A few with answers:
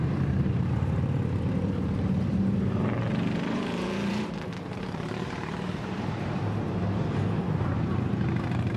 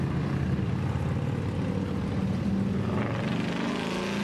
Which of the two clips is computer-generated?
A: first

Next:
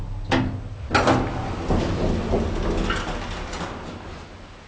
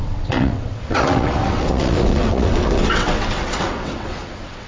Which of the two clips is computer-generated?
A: second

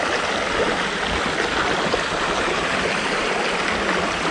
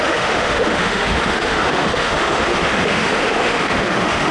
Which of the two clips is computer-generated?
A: second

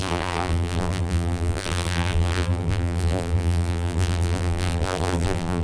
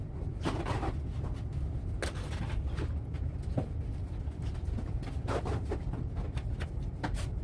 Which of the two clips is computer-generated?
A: first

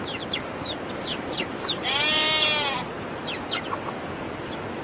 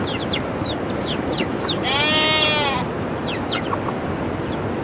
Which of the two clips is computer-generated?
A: first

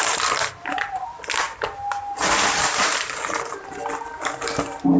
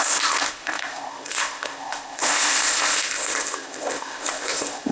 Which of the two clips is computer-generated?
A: second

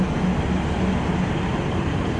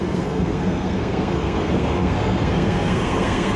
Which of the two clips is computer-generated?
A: second